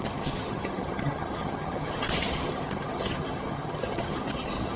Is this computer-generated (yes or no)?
yes